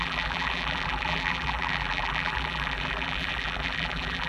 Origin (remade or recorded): remade